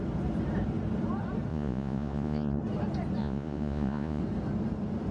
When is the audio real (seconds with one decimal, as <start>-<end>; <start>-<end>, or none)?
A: 0.0-1.5; 2.6-3.2; 4.2-5.1